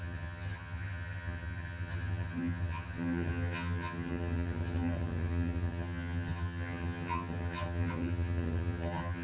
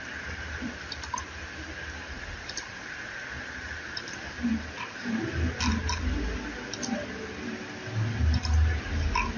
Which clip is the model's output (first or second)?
first